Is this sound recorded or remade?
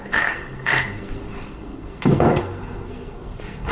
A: remade